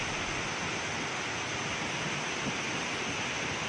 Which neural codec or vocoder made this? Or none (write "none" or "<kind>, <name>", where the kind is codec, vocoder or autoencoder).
none